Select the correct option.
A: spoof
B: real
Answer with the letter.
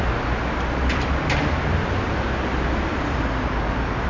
B